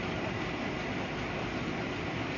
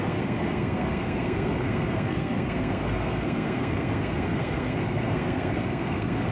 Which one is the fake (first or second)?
second